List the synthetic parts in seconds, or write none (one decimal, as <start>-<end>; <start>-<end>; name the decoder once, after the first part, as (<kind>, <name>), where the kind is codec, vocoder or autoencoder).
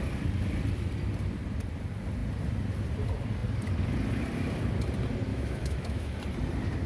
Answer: 5.3-6.2 (autoencoder, DAC-VAE)